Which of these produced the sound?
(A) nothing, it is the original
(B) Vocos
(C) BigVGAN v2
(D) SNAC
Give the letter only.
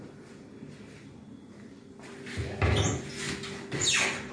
A